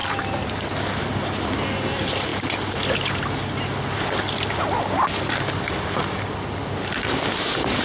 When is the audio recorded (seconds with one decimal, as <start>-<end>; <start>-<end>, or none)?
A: 0.0-7.8